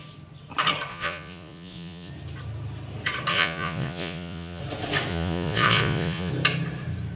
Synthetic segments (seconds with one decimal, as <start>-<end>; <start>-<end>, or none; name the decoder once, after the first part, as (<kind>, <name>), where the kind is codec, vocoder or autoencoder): 0.9-2.1 (vocoder, Vocos); 3.3-4.6; 5.1-6.3